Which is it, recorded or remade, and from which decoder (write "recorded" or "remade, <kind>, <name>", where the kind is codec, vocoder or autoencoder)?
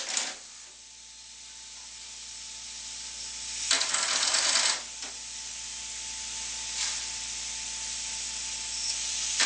recorded